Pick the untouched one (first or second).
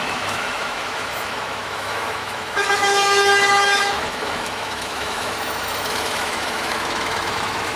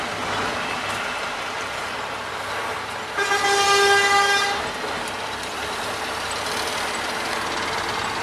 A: second